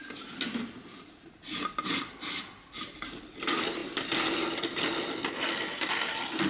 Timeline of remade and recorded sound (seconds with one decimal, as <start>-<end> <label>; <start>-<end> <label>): 0.0-6.5 recorded